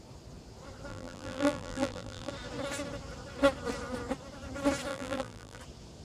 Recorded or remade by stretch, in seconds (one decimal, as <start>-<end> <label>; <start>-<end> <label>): 0.0-0.9 recorded; 0.9-2.3 remade; 2.3-4.9 recorded; 4.9-5.6 remade; 5.6-6.0 recorded